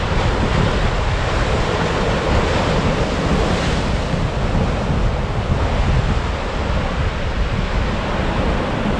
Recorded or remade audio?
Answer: recorded